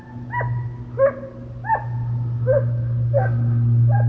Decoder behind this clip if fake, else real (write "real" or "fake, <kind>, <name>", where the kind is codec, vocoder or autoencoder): real